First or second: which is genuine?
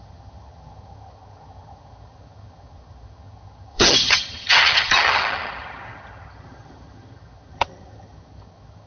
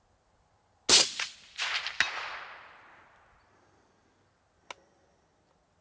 second